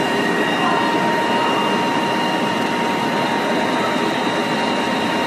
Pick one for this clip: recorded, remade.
recorded